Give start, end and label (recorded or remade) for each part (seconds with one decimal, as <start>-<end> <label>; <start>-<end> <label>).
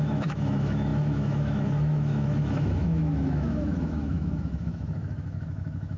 0.0-6.0 remade